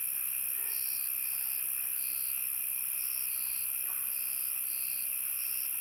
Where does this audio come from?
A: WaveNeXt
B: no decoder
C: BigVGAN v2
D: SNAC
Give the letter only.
B